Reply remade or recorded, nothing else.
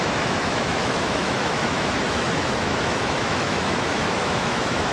remade